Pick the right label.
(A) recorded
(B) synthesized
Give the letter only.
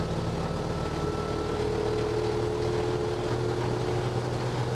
A